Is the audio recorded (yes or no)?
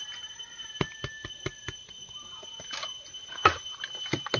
yes